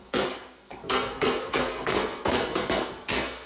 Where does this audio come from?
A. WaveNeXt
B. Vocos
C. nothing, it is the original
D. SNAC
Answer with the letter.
D